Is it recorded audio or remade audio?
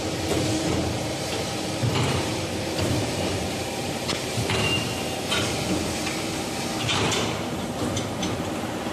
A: remade